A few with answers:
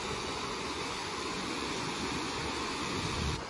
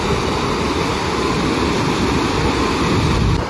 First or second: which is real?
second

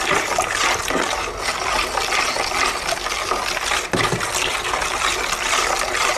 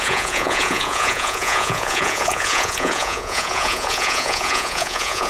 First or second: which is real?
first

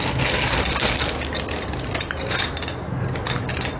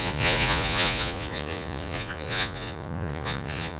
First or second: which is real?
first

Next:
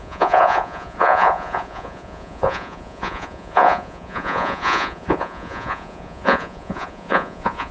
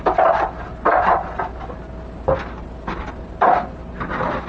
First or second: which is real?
second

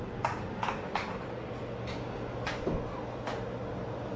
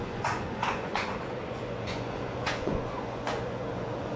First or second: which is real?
first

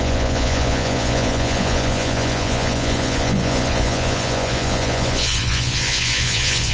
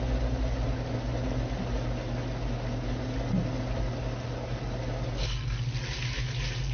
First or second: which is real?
second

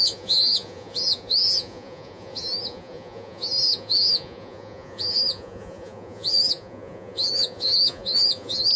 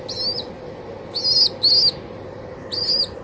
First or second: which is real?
second